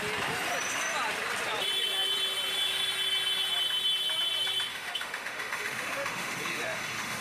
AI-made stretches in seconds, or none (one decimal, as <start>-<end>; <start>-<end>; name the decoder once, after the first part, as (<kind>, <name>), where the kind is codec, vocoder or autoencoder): 4.7-7.2 (autoencoder, DAC-VAE)